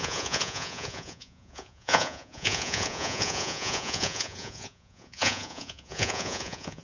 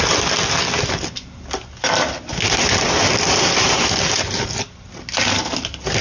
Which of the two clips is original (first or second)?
second